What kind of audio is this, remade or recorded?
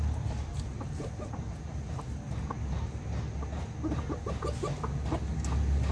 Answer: recorded